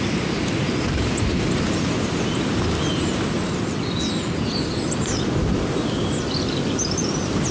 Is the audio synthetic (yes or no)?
no